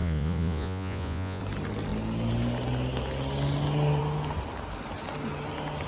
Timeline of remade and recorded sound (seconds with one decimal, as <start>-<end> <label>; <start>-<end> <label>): 0.0-1.4 remade; 1.4-5.9 recorded